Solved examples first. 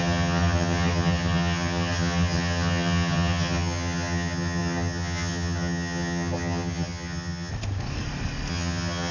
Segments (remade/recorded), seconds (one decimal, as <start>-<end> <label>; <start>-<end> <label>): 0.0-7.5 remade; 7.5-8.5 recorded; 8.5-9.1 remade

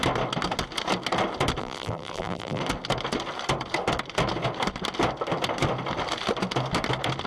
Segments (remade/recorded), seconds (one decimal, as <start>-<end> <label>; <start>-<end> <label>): 0.0-1.6 recorded; 1.6-2.6 remade; 2.6-7.3 recorded

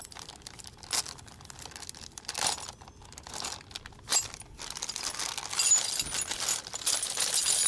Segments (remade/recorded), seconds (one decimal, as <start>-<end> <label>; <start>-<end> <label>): 0.0-7.7 recorded

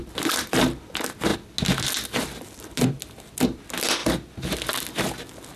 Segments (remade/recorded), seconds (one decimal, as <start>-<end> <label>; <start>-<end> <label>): 0.0-5.6 recorded